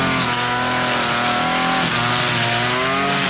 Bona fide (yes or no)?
yes